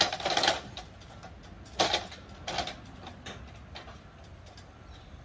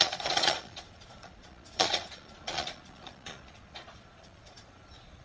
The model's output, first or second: second